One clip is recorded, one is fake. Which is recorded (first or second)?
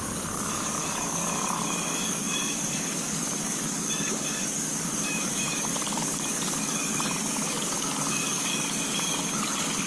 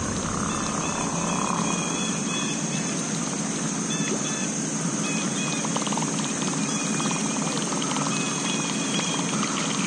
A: second